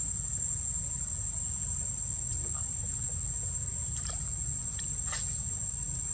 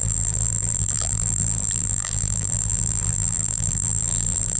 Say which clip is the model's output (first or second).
second